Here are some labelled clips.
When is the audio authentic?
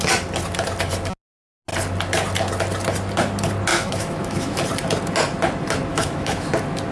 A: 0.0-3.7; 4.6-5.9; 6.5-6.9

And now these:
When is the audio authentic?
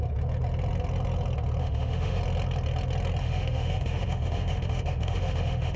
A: 0.0-1.6; 2.2-3.2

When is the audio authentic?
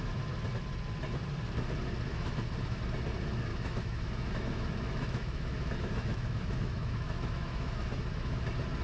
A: 0.0-2.1; 2.8-3.5; 8.4-8.8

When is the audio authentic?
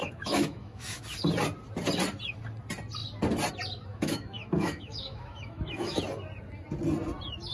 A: 1.0-3.9; 6.0-7.5